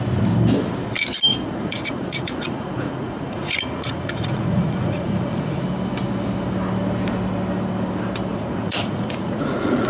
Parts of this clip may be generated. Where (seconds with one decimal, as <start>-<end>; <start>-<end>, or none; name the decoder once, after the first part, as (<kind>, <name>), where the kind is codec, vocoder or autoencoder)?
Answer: 1.3-5.6 (vocoder, Vocos); 8.3-9.9